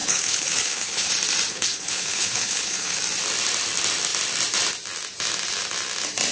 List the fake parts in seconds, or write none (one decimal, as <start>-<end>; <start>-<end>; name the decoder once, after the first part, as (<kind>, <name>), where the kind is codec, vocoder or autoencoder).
0.0-1.1 (codec, HILCodec); 1.5-3.0